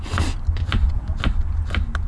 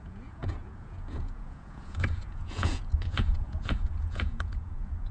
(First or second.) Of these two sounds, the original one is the first